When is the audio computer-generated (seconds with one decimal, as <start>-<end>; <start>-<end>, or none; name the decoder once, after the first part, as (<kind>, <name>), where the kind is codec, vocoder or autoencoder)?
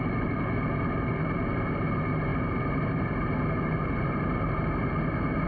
0.0-5.5 (vocoder, BigVGAN v2)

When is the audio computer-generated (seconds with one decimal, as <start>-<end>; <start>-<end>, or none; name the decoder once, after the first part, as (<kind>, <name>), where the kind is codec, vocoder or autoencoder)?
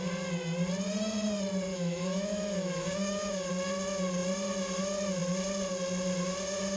1.7-3.5 (autoencoder, DAC-VAE)